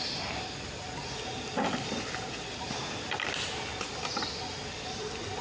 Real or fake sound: real